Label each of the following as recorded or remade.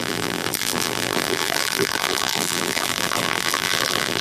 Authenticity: remade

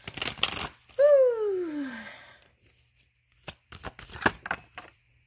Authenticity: recorded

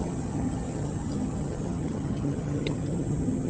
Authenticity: remade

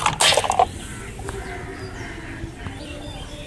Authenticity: recorded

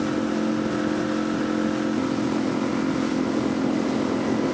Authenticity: recorded